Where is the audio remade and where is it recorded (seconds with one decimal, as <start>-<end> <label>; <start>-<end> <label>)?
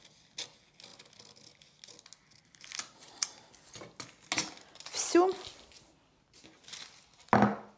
0.0-7.8 recorded